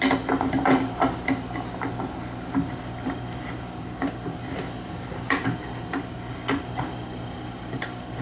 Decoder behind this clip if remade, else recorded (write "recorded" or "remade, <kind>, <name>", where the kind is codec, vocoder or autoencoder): recorded